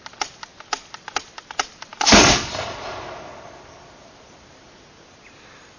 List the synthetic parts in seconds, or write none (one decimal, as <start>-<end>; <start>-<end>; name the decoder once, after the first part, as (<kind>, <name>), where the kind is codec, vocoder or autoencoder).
none